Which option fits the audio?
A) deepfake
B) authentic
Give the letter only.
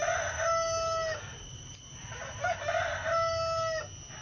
B